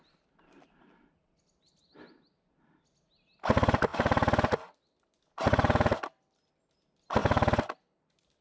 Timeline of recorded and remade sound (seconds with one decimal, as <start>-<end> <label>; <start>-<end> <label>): 0.0-8.4 recorded